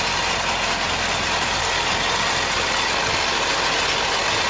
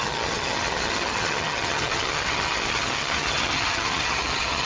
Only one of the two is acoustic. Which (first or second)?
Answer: first